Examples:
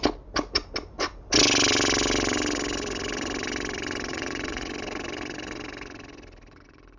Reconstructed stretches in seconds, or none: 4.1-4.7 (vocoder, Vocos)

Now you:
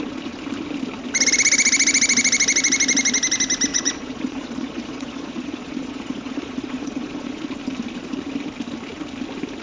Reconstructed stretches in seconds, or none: 3.7-7.4 (vocoder, Vocos)

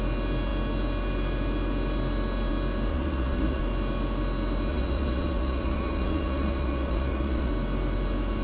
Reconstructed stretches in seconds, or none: 2.9-3.6 (vocoder, Vocos); 4.7-7.5